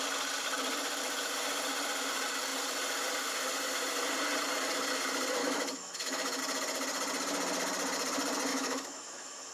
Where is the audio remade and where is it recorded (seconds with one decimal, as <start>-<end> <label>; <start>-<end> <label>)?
0.0-5.4 recorded; 5.4-6.4 remade; 6.4-8.5 recorded; 8.5-9.5 remade